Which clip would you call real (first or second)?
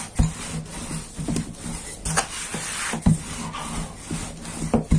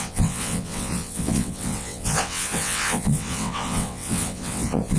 first